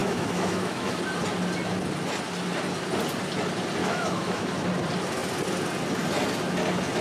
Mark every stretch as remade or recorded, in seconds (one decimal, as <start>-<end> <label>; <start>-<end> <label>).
0.0-1.0 remade; 1.0-3.8 recorded; 3.8-4.5 remade; 4.5-7.0 recorded